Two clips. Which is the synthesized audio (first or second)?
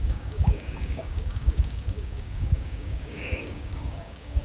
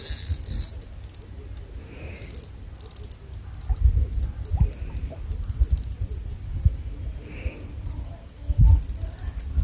first